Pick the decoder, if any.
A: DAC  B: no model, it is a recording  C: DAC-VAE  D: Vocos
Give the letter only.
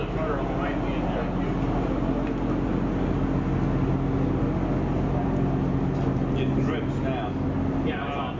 B